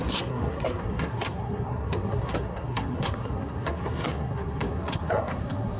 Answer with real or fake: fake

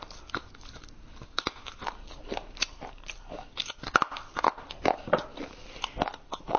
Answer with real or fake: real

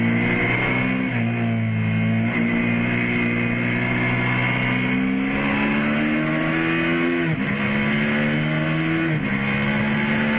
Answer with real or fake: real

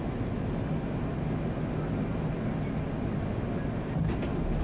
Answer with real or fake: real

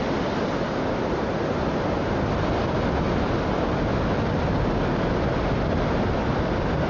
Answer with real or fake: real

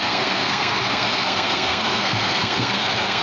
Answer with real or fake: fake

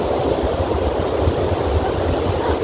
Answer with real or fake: real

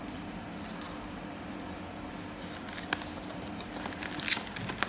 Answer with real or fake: real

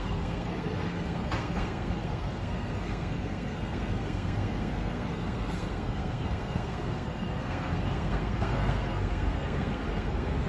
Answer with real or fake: fake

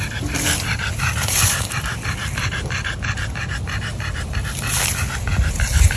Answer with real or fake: real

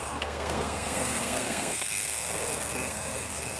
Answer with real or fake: fake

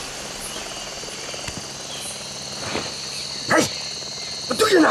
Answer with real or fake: real